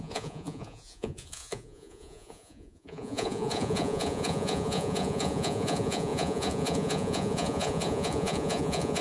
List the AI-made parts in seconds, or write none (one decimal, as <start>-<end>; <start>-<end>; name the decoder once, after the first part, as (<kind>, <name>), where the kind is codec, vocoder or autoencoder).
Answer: 0.0-9.0 (vocoder, Vocos)